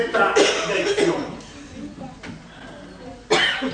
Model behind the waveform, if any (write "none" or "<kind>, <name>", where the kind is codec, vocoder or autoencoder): none